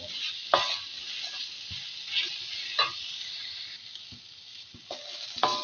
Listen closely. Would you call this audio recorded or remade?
recorded